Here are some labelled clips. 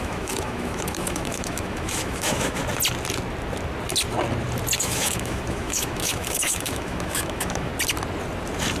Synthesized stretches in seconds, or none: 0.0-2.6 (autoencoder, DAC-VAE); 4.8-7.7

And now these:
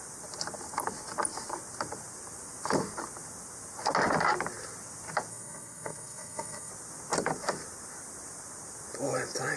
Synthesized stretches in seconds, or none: 5.3-6.7 (codec, SNAC)

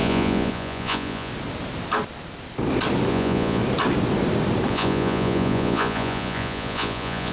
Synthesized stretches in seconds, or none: 0.0-1.3 (vocoder, Vocos); 3.1-3.6; 4.7-7.3

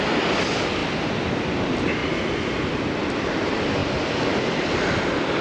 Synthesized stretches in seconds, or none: none

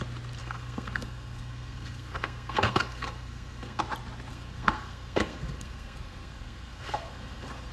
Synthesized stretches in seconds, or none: 0.4-3.8 (codec, SNAC); 4.3-7.7

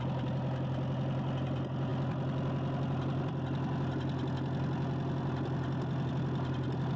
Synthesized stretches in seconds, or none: none

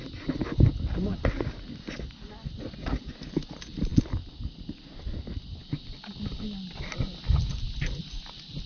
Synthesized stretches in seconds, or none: none